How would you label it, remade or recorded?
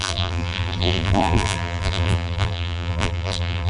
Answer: remade